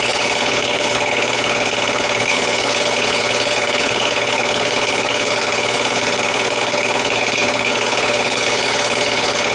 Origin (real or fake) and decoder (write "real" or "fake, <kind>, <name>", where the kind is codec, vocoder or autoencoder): fake, codec, HILCodec